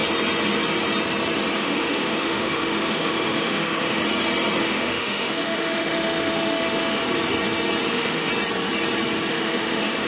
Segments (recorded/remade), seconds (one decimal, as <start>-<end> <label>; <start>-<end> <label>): 0.0-1.6 recorded; 1.6-4.0 remade; 4.0-4.6 recorded; 4.6-7.0 remade; 7.0-7.9 recorded; 7.9-8.3 remade; 8.3-9.3 recorded; 9.3-10.1 remade